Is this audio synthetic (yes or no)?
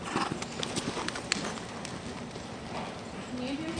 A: no